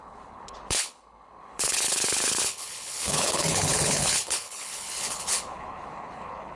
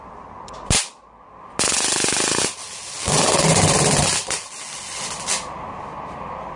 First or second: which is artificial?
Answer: first